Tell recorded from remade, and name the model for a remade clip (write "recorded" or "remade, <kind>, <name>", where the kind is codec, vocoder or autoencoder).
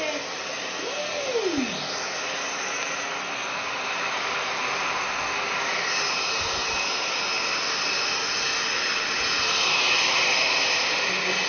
recorded